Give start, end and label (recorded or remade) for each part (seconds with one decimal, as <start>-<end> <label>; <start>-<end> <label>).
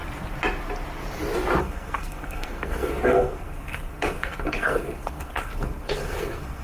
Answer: 0.0-1.6 recorded; 1.6-6.6 remade